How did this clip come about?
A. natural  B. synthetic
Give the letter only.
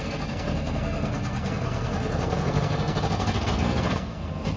B